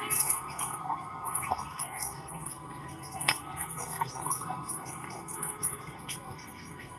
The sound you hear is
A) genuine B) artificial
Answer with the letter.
B